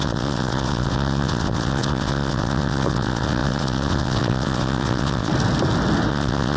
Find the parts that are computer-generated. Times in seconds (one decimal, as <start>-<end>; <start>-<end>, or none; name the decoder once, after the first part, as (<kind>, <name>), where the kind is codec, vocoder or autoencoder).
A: 0.0-5.3 (vocoder, WaveNeXt); 6.1-6.6